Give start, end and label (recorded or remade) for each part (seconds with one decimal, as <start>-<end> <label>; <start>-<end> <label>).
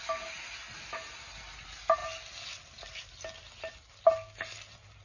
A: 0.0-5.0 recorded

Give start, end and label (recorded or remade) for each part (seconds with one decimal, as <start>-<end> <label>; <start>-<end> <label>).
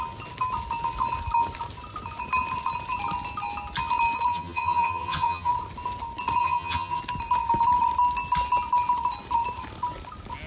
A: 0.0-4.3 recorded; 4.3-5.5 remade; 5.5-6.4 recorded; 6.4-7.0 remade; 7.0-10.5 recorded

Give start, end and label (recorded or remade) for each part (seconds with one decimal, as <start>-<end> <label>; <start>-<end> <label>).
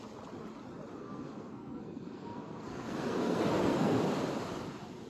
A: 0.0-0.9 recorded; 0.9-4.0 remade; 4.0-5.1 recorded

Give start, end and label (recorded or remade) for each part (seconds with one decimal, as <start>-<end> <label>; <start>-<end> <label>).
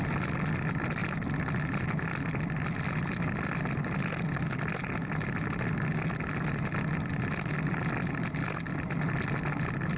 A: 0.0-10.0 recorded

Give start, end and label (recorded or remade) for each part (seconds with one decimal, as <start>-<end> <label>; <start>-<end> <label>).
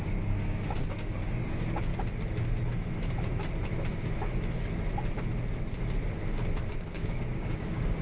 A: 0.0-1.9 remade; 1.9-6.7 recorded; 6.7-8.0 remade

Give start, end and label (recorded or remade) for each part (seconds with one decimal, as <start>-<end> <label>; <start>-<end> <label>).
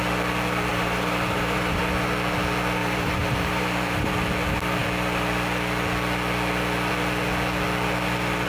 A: 0.0-0.7 recorded; 0.7-1.8 remade; 1.8-2.8 recorded; 2.8-4.1 remade; 4.1-8.5 recorded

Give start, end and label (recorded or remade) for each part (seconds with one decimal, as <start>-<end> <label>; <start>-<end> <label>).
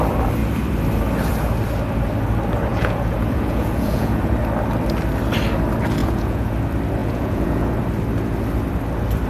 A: 0.0-2.7 recorded; 2.7-4.3 remade; 4.3-6.0 recorded; 6.0-6.5 remade; 6.5-7.0 recorded; 7.0-7.7 remade; 7.7-9.3 recorded